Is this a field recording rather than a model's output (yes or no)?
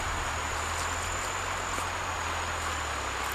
yes